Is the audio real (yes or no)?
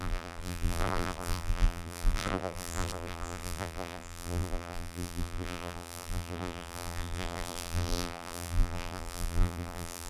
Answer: no